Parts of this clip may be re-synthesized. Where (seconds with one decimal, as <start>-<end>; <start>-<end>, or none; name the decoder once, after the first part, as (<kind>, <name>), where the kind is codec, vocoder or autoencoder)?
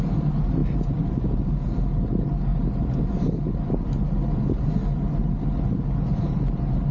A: none